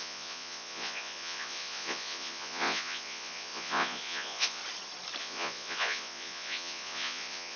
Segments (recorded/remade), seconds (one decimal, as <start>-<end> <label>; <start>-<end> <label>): 0.0-4.6 remade; 4.6-5.2 recorded; 5.2-7.6 remade